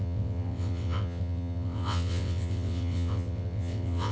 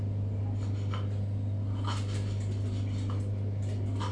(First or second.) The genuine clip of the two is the second